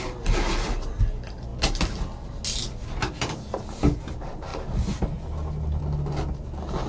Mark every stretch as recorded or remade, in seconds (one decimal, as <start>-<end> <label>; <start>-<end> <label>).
0.0-6.9 recorded